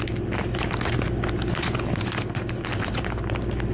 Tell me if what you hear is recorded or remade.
recorded